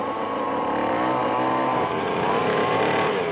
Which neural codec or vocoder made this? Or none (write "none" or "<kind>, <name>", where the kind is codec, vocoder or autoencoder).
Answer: vocoder, BigVGAN v2